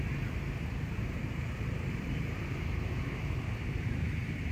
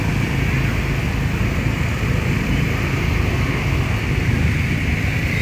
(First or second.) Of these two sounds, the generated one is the first